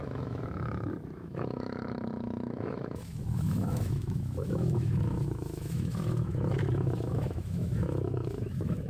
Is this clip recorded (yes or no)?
no